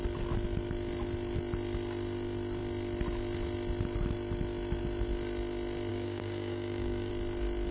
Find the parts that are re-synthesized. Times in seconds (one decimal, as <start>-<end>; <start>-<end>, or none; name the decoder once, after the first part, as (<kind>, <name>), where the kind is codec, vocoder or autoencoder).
5.9-7.1 (codec, DAC)